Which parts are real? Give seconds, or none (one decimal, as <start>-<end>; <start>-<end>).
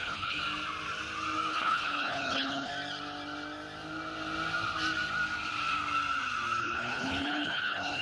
0.4-1.5; 2.7-6.6